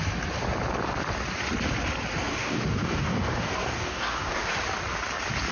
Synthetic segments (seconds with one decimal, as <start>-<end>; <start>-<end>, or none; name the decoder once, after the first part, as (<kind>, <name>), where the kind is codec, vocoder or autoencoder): 2.3-4.5 (codec, DAC)